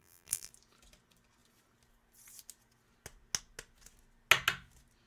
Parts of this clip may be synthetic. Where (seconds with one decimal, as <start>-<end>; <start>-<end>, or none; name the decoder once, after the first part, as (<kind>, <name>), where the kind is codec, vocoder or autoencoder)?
0.0-0.5 (vocoder, BigVGAN v2)